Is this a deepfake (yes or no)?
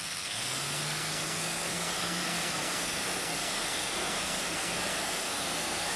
yes